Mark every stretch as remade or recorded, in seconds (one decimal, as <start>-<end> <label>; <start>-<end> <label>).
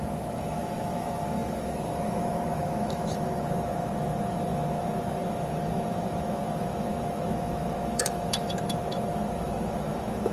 0.0-10.3 remade